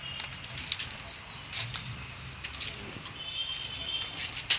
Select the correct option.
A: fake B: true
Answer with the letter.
B